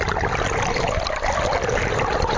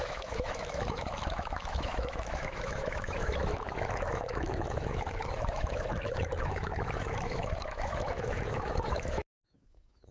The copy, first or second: second